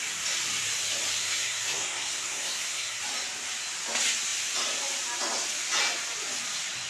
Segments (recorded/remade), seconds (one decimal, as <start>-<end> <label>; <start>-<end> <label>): 0.0-1.2 recorded; 1.2-3.0 remade; 3.0-6.9 recorded